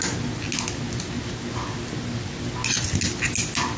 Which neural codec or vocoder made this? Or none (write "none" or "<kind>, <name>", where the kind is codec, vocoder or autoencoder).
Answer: none